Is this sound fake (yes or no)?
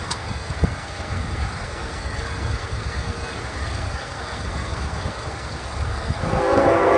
yes